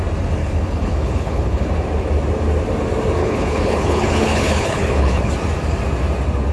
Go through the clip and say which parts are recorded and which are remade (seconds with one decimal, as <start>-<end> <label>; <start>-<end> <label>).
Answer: 0.0-0.4 recorded; 0.4-1.7 remade; 1.7-3.2 recorded; 3.2-5.3 remade; 5.3-6.5 recorded